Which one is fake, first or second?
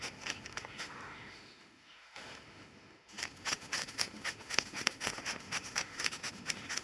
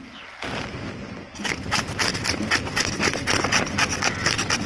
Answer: first